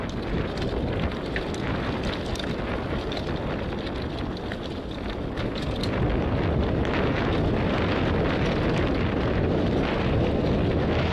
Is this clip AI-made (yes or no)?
no